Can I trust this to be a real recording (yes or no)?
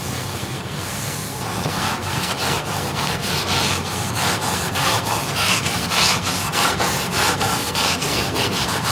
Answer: no